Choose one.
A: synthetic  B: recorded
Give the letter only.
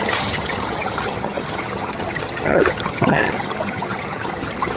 A